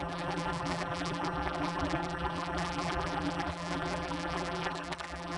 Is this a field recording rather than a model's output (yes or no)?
no